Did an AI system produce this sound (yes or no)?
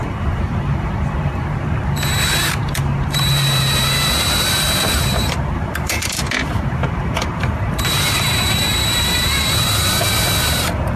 yes